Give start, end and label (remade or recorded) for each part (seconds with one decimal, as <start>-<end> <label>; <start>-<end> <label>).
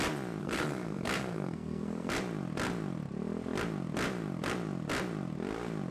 0.0-0.4 recorded; 0.4-2.1 remade; 2.1-5.9 recorded